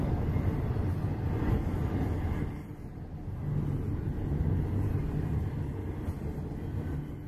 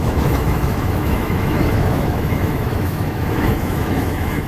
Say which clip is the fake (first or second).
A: second